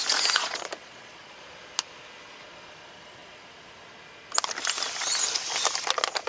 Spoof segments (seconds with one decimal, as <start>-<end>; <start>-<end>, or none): 0.4-1.4